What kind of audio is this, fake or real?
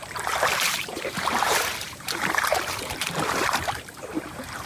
fake